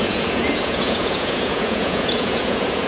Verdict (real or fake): fake